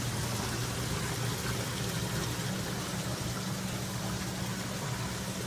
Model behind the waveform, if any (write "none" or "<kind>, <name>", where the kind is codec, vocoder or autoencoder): none